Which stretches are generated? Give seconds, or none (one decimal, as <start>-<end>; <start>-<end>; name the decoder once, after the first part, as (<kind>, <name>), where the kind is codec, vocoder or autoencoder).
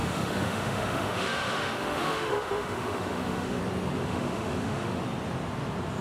0.0-3.6 (autoencoder, DAC-VAE); 4.0-5.0